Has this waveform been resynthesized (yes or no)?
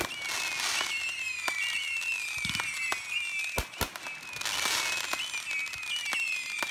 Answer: no